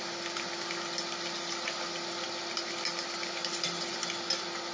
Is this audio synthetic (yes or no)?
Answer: no